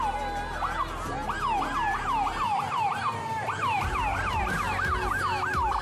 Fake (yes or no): no